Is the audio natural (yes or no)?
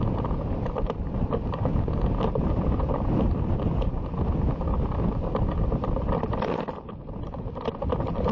yes